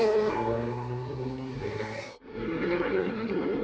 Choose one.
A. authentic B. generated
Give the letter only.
B